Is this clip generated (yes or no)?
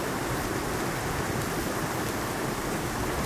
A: no